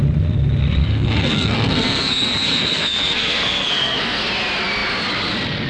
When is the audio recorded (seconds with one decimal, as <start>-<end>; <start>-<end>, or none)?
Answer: 0.0-0.8; 4.2-5.7